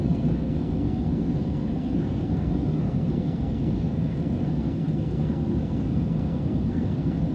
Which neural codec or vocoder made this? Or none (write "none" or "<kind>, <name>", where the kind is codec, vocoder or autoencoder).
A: codec, SNAC